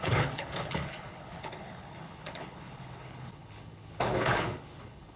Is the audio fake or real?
fake